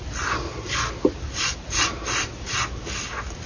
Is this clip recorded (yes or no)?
no